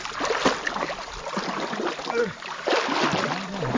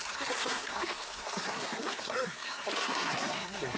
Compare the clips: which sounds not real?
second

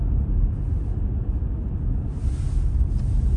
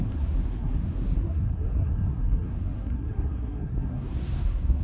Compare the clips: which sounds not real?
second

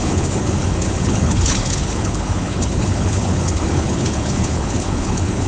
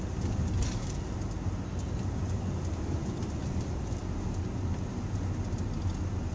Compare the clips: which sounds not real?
first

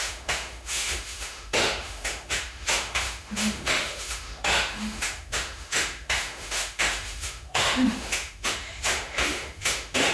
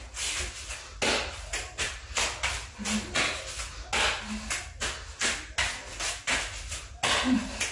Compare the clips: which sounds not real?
first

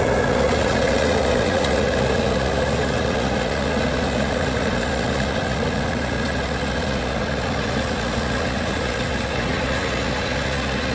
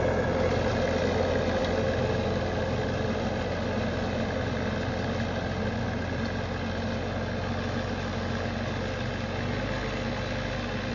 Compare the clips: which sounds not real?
first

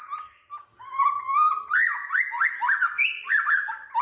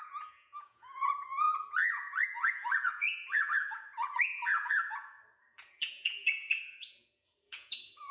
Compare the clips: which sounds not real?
second